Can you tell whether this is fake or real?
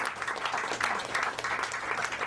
real